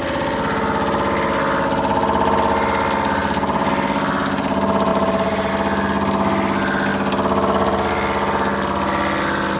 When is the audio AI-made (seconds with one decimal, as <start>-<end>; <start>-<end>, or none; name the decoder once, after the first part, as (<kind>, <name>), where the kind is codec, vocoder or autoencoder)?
3.2-3.7 (vocoder, BigVGAN v2); 4.9-5.5